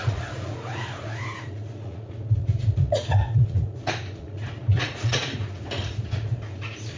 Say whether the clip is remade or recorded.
remade